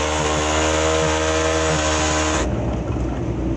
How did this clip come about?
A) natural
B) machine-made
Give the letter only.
A